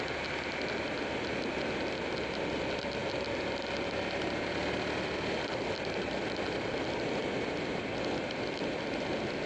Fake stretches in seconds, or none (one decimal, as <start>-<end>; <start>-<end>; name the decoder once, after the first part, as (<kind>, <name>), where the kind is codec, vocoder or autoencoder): none